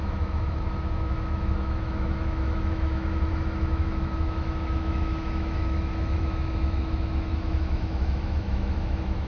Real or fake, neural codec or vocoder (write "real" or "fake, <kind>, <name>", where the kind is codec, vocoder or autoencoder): fake, autoencoder, DAC-VAE